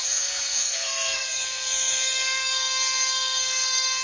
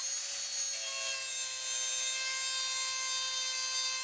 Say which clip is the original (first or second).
second